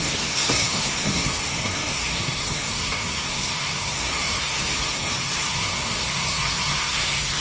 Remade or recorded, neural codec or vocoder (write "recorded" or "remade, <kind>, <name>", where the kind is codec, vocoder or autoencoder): remade, codec, SNAC